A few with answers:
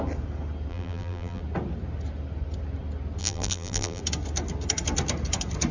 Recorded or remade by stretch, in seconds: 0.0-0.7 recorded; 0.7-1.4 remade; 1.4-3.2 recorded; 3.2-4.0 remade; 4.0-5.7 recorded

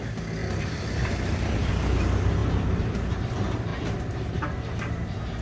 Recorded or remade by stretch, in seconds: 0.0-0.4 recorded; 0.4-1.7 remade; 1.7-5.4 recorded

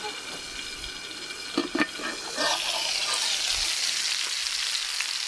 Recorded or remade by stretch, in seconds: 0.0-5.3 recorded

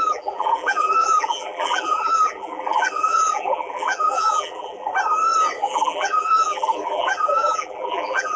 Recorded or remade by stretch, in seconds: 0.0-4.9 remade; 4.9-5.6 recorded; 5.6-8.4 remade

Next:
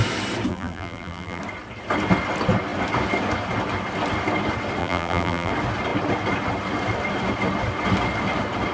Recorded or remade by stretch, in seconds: 0.0-0.5 recorded; 0.5-1.4 remade; 1.4-4.8 recorded; 4.8-5.5 remade; 5.5-8.7 recorded

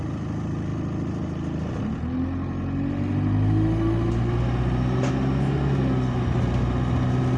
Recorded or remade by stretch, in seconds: 0.0-7.4 recorded

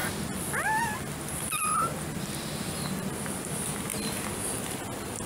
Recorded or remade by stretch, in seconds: 0.0-5.3 remade